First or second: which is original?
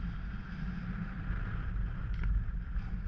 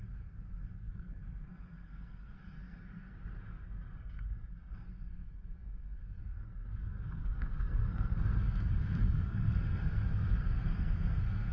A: first